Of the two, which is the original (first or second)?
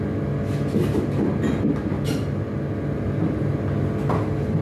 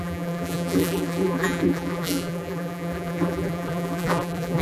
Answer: first